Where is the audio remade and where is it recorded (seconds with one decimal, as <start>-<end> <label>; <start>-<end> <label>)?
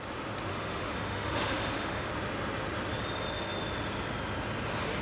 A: 0.0-0.5 recorded; 0.5-2.1 remade; 2.1-5.0 recorded